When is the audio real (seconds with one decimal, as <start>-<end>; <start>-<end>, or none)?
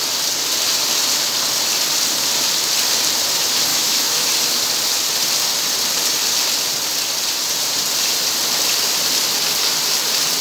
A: 0.0-3.7; 4.3-10.4